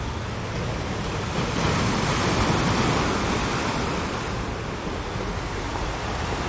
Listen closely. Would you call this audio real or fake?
real